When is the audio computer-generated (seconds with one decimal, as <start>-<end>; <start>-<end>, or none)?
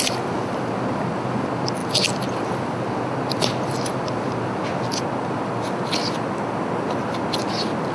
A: none